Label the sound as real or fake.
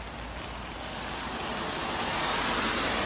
real